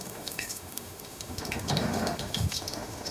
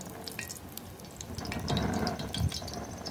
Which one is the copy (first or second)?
first